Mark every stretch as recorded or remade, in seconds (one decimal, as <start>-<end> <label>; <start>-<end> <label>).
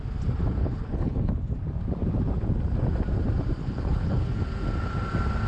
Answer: 0.0-0.6 recorded; 0.6-1.3 remade; 1.3-3.6 recorded; 3.6-4.4 remade; 4.4-5.5 recorded